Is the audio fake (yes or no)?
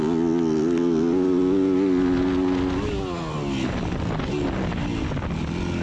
no